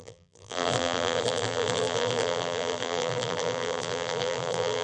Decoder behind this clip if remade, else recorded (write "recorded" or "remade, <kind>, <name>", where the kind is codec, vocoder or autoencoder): remade, vocoder, BigVGAN v2